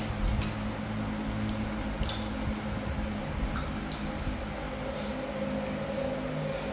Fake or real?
real